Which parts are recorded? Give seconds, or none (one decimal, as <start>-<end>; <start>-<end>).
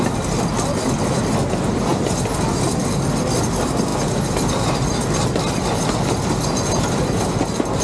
0.0-7.8